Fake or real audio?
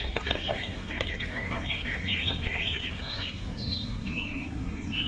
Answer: fake